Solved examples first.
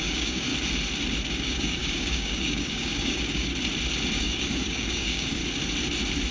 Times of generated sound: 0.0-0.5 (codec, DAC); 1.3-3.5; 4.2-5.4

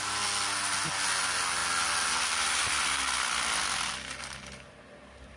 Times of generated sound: none